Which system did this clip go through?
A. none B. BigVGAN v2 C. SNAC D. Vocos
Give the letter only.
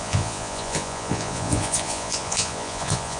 D